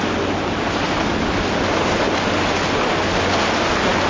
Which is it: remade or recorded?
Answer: recorded